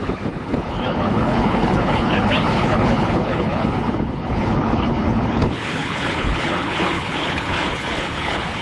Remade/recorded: remade